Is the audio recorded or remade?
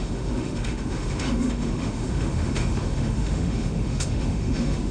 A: remade